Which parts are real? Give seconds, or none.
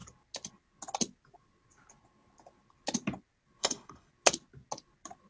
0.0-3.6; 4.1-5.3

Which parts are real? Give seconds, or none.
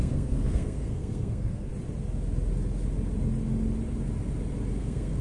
1.7-4.8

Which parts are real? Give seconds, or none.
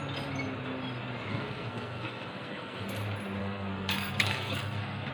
0.0-1.3; 2.9-3.4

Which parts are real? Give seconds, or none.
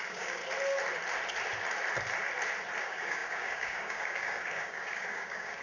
0.4-2.8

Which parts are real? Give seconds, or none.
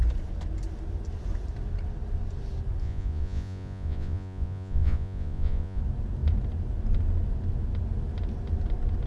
0.0-2.8; 5.8-9.1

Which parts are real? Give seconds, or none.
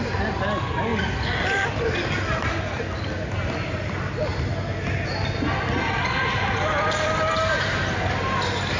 0.0-0.9; 2.9-6.2; 7.2-8.8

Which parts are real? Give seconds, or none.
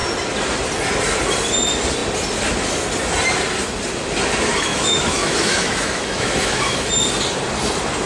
0.0-4.7; 6.9-8.1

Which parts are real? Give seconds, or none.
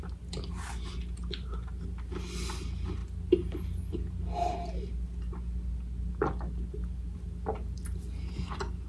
0.0-8.9